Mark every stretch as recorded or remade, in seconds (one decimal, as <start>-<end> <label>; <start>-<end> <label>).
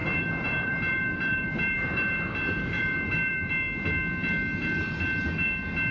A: 0.0-3.5 remade; 3.5-5.9 recorded